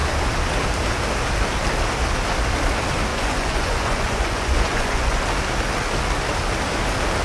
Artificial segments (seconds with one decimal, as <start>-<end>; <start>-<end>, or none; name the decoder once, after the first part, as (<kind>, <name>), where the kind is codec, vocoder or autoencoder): 3.1-5.2 (vocoder, Vocos)